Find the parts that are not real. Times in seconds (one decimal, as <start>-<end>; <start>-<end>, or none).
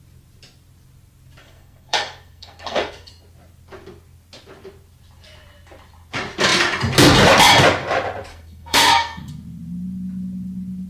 1.4-3.1; 8.3-9.3